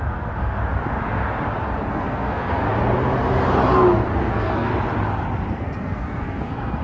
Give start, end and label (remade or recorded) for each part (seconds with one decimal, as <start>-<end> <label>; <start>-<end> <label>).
0.0-0.6 remade; 0.6-1.9 recorded; 1.9-2.6 remade; 2.6-4.3 recorded; 4.3-4.7 remade; 4.7-5.5 recorded; 5.5-6.8 remade